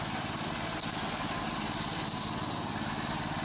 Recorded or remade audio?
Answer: recorded